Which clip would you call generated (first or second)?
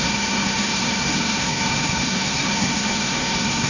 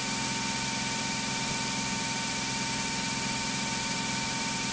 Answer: first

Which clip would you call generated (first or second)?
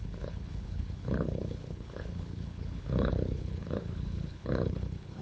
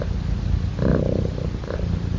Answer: first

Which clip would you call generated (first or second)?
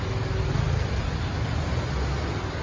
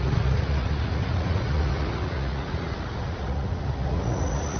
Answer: second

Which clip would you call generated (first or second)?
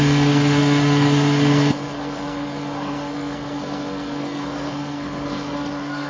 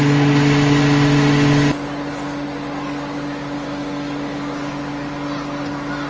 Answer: first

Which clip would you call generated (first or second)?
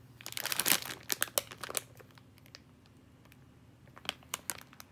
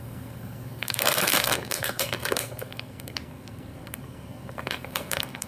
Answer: second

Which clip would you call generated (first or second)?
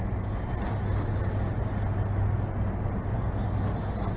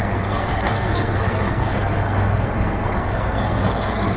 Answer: second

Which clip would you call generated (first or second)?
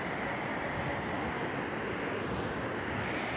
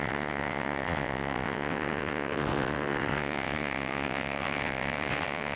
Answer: second